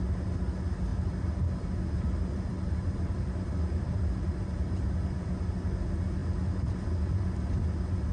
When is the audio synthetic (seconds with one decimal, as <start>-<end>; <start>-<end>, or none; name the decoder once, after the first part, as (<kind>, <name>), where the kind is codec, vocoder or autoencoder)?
0.9-4.9 (vocoder, BigVGAN v2); 6.2-6.9